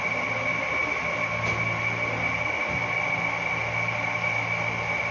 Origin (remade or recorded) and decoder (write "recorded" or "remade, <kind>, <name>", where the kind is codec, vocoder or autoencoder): recorded